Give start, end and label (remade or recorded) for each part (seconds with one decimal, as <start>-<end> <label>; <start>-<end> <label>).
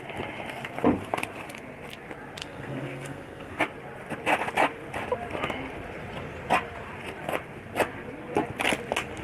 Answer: 0.0-2.4 recorded; 2.4-3.6 remade; 3.6-9.2 recorded